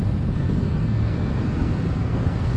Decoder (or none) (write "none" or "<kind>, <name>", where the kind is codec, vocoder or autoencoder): codec, SNAC